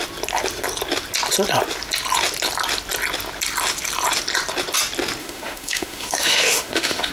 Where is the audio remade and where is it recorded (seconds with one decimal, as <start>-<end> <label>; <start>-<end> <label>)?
0.0-5.2 recorded; 5.2-7.1 remade